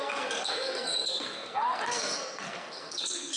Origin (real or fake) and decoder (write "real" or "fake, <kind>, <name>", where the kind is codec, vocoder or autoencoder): fake, codec, SNAC